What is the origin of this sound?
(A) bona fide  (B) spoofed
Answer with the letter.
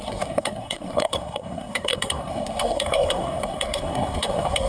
B